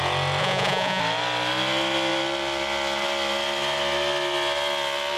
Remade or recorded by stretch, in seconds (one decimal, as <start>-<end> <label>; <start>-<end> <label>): 0.0-0.4 recorded; 0.4-1.0 remade; 1.0-5.2 recorded